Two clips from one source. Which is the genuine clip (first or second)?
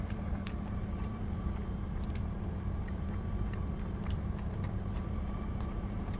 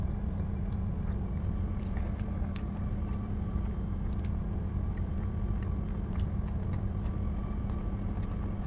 second